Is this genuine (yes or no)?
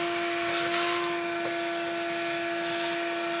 yes